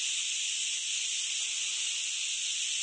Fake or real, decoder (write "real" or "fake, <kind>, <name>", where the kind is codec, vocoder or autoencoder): real